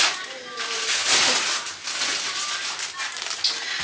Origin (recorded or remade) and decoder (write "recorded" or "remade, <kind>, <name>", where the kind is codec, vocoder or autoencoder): recorded